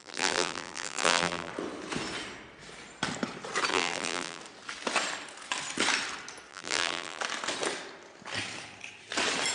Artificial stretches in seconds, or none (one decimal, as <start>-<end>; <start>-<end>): 0.0-1.5; 3.7-4.4; 6.5-7.2